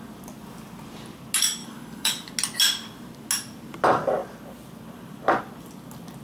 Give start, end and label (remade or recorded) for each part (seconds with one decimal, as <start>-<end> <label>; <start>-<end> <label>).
0.0-1.6 recorded; 1.6-2.3 remade; 2.3-6.2 recorded